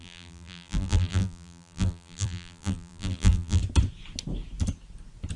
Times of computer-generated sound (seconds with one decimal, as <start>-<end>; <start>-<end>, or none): 0.0-3.6